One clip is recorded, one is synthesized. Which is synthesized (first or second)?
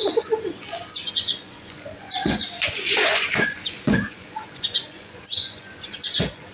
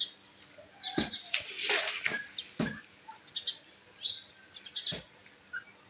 first